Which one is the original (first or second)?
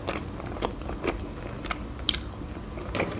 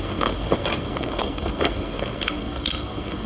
first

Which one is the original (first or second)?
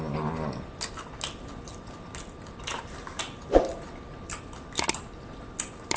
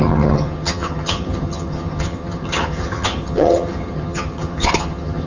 first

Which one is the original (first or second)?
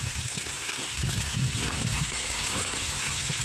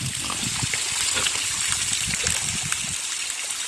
second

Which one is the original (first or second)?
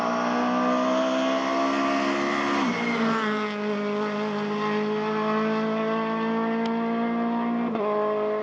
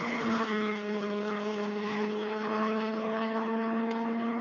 first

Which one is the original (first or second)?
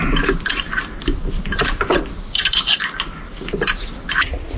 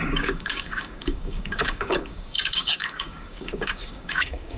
first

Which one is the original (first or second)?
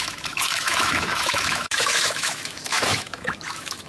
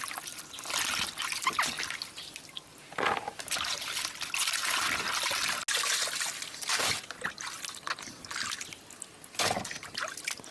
second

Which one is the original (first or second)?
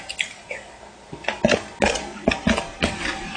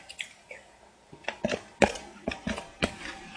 first